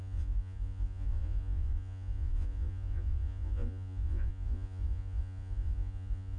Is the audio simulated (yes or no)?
yes